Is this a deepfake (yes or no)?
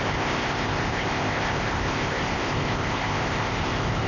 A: yes